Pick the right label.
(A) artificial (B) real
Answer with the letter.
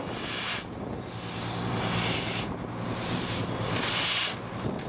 B